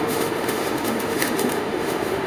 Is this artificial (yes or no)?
yes